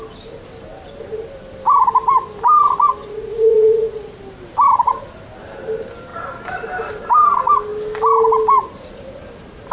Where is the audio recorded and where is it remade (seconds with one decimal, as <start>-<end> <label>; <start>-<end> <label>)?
0.0-3.0 recorded; 3.0-4.2 remade; 4.2-9.7 recorded